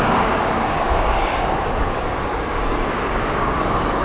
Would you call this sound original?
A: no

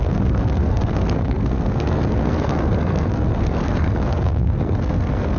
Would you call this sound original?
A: no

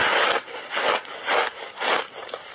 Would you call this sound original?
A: yes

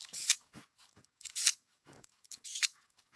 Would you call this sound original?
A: no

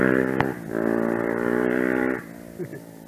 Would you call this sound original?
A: yes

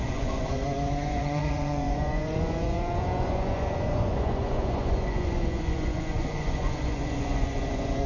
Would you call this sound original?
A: no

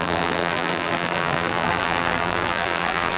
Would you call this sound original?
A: no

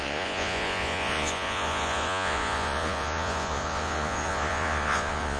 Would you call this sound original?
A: no